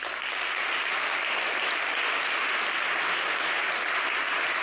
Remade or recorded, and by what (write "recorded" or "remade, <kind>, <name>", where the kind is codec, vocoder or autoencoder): recorded